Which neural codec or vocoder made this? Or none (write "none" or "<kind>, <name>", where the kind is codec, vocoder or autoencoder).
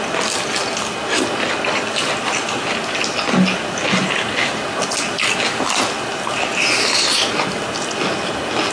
none